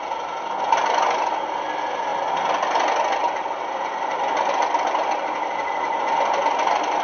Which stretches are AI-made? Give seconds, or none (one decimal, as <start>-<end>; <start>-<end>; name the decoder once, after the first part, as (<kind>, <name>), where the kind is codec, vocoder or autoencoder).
none